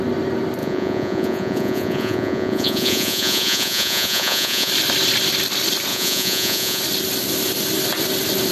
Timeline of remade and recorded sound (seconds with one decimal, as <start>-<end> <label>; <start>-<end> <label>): 0.0-0.6 recorded; 0.6-4.7 remade; 4.7-5.9 recorded; 5.9-6.8 remade; 6.8-8.5 recorded